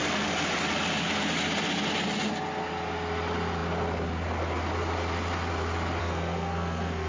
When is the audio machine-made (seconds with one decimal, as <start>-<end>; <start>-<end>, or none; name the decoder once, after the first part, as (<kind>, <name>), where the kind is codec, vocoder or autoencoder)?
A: 6.0-7.1 (codec, SNAC)